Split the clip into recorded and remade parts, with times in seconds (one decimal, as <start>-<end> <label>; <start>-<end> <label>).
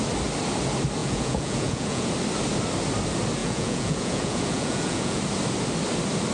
0.0-1.0 recorded; 1.0-2.1 remade; 2.1-3.4 recorded; 3.4-5.2 remade; 5.2-6.3 recorded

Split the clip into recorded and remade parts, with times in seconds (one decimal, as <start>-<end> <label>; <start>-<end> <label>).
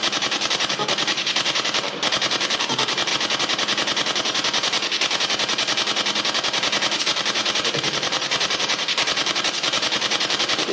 0.0-3.1 remade; 3.1-7.0 recorded; 7.0-10.7 remade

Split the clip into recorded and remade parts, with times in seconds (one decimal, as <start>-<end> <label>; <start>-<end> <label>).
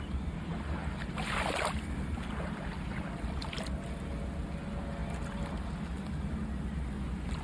0.0-7.4 recorded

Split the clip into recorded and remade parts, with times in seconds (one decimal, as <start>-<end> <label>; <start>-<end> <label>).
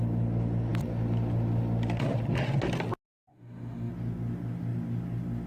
0.0-3.3 recorded; 3.3-3.9 remade; 3.9-5.5 recorded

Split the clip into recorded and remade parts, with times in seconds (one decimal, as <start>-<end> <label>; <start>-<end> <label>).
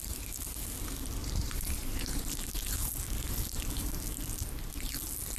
0.0-1.2 recorded; 1.2-2.9 remade; 2.9-5.4 recorded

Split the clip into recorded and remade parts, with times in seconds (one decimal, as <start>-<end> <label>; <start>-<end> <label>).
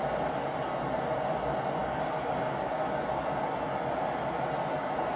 0.0-5.2 recorded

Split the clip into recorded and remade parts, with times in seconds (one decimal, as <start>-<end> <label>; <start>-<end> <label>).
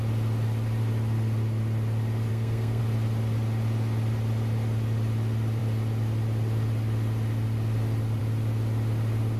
0.0-2.3 recorded; 2.3-2.8 remade; 2.8-9.4 recorded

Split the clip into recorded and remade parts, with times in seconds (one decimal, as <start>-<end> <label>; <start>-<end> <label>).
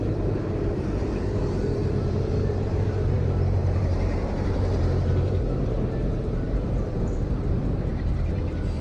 0.0-8.8 remade